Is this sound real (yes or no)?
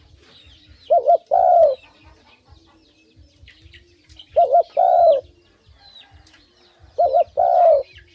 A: yes